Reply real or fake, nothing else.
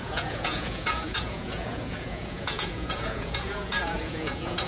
fake